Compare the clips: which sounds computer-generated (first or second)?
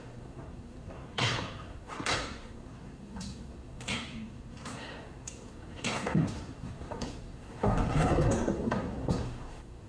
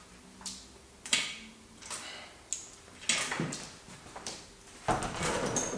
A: first